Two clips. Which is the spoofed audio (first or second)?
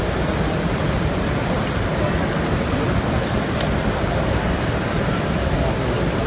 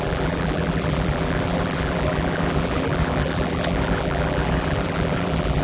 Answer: second